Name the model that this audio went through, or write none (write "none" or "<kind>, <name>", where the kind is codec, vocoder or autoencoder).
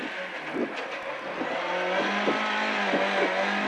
none